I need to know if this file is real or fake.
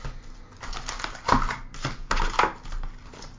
real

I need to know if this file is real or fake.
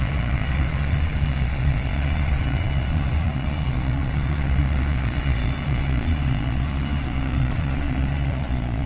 fake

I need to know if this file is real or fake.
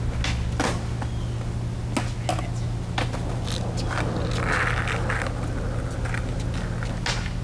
real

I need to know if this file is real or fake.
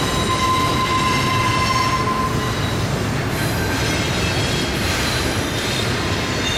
real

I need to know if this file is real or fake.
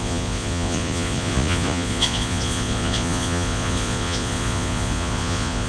fake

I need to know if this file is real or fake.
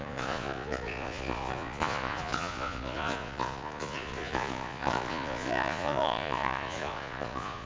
fake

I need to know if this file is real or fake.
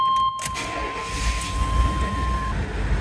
real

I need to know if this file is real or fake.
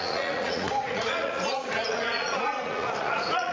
fake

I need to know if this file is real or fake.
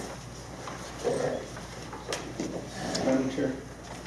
real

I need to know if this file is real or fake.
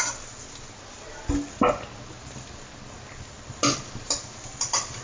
real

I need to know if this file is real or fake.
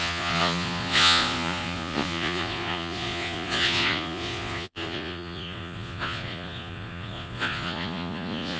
fake